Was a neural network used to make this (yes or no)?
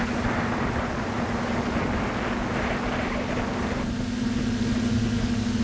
no